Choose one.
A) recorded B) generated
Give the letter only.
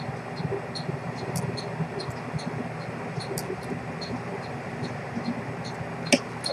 A